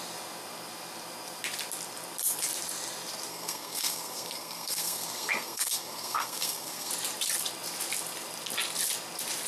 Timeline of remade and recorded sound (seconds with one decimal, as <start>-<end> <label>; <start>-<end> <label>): 0.0-3.3 recorded; 3.3-6.9 remade; 6.9-9.5 recorded